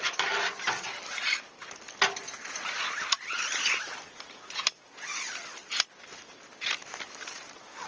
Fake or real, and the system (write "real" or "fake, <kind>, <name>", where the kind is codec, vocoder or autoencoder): real